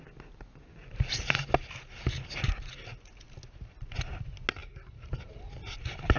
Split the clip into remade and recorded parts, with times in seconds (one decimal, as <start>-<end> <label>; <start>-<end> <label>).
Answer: 0.0-6.2 recorded